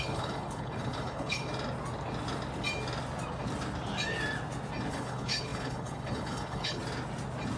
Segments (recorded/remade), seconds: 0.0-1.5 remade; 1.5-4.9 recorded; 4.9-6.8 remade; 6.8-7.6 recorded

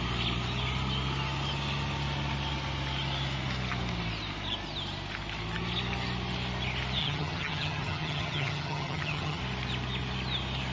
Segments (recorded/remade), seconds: 0.0-7.0 recorded; 7.0-9.4 remade; 9.4-10.7 recorded

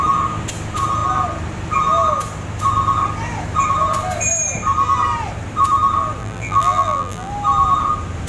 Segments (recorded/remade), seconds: 0.0-6.2 recorded; 6.2-7.3 remade; 7.3-8.3 recorded

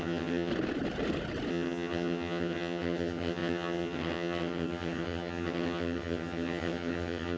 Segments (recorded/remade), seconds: 0.0-0.5 remade; 0.5-1.5 recorded; 1.5-7.4 remade

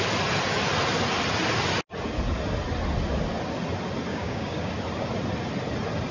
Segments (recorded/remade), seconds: 0.0-4.1 recorded; 4.1-4.7 remade; 4.7-6.1 recorded

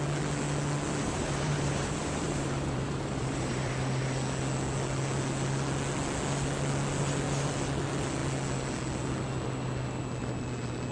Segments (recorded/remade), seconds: 0.0-1.0 recorded; 1.0-3.7 remade; 3.7-10.9 recorded

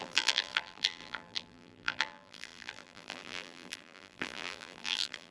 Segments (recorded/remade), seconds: 0.0-5.3 remade

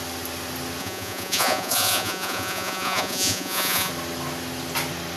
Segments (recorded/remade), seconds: 0.0-0.8 recorded; 0.8-3.9 remade; 3.9-5.2 recorded